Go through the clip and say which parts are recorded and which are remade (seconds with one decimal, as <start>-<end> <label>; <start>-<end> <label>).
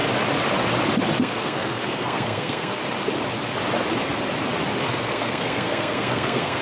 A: 0.0-1.2 recorded; 1.2-2.8 remade; 2.8-4.8 recorded; 4.8-6.6 remade